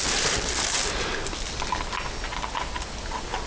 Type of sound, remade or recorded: recorded